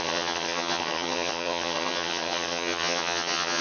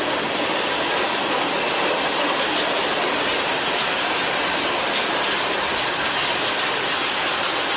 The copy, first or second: first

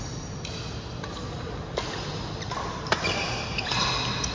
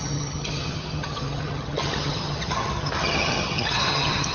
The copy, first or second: second